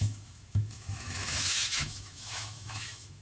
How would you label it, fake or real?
fake